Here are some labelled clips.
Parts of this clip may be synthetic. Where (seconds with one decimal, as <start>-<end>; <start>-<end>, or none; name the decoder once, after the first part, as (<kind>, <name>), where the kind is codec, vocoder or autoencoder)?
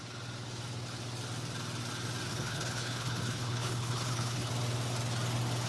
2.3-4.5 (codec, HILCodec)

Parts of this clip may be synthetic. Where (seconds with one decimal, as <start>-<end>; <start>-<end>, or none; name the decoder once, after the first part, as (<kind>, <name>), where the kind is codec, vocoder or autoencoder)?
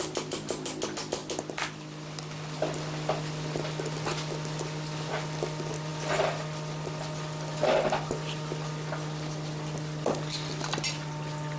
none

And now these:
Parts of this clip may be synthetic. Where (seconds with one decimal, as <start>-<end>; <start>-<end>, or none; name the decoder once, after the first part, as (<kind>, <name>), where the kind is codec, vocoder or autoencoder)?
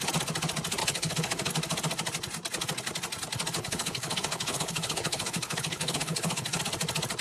0.8-1.5 (codec, HILCodec); 3.6-6.6